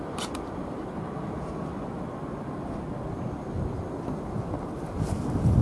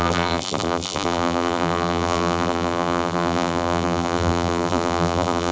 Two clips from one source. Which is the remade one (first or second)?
second